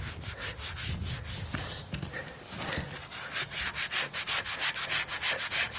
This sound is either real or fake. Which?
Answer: real